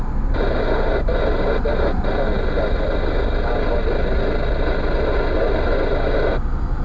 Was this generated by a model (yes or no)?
no